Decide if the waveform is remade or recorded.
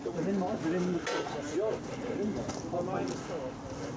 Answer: recorded